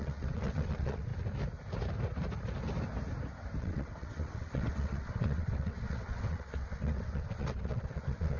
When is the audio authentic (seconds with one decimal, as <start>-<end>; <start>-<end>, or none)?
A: 1.1-3.6

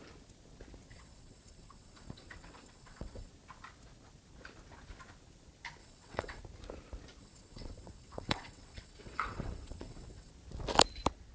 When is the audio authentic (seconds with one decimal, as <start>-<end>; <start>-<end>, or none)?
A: 0.0-0.9; 3.3-5.8; 6.4-7.2; 10.3-11.3

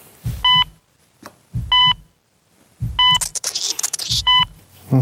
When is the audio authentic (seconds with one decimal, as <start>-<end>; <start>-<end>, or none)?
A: 0.0-3.3; 4.4-5.0

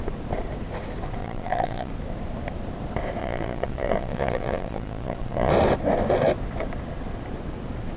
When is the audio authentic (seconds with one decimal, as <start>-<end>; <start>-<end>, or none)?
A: 0.0-1.2; 1.9-3.2; 5.5-8.0

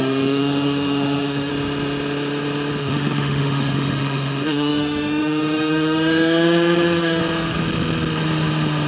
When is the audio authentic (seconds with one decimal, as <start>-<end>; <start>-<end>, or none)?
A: 1.5-2.8; 7.2-8.9

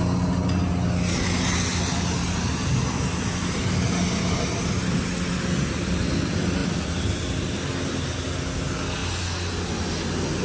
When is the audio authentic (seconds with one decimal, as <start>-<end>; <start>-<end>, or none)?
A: 0.0-10.4

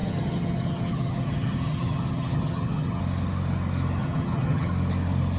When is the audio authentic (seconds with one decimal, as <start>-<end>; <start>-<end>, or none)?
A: 3.0-4.0; 4.7-5.4